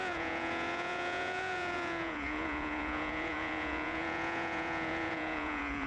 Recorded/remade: remade